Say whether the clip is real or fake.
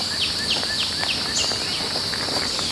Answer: real